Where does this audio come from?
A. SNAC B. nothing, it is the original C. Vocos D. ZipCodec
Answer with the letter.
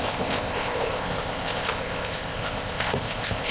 D